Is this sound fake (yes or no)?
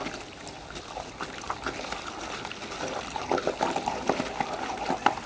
no